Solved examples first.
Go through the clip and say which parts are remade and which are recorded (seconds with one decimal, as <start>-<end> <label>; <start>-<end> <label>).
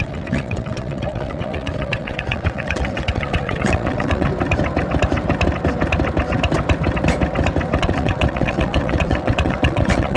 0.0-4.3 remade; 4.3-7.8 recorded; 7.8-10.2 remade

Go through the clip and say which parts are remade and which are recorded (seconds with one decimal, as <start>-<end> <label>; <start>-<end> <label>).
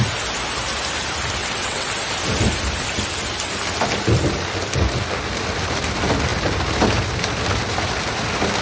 0.0-1.4 recorded; 1.4-1.9 remade; 1.9-8.6 recorded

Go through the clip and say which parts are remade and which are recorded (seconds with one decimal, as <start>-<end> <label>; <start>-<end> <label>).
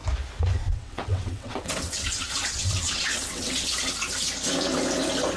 0.0-0.7 recorded; 0.7-3.9 remade; 3.9-5.4 recorded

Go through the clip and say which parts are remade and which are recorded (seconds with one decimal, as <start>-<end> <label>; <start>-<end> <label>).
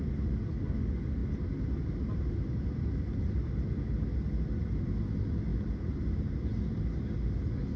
0.0-7.8 recorded